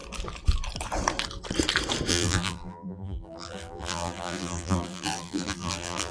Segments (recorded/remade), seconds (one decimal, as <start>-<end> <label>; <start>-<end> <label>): 0.0-2.1 recorded; 2.1-6.1 remade